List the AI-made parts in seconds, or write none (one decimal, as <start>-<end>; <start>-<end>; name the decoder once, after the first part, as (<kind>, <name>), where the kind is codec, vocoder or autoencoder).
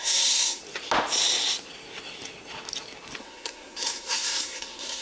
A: 0.0-0.6 (codec, SNAC); 3.2-5.0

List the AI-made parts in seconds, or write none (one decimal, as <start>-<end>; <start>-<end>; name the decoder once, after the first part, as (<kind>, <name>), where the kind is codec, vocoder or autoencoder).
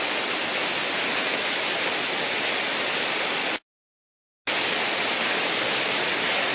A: 5.2-5.8 (codec, DAC)